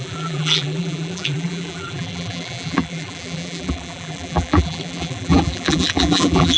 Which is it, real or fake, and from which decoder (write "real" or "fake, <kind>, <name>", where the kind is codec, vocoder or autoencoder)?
fake, vocoder, BigVGAN v2